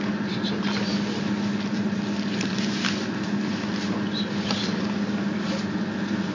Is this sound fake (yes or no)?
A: no